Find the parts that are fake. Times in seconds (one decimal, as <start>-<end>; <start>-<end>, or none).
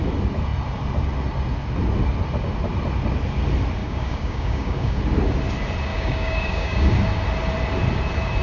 3.8-5.0; 5.9-6.9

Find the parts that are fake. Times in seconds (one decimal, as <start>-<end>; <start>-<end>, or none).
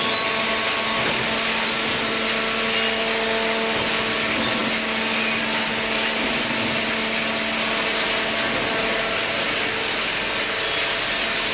none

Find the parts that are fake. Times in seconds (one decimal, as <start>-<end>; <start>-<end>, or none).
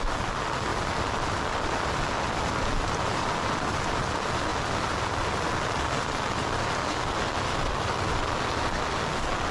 none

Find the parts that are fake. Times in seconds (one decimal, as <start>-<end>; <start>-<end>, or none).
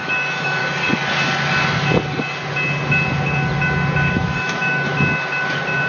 0.0-0.6; 4.1-4.9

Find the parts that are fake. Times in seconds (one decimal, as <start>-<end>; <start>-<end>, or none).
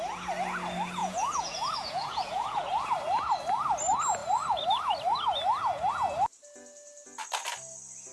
1.0-2.7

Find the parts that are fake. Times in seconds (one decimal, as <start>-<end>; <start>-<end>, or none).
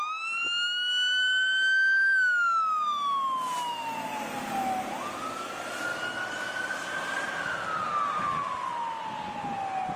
none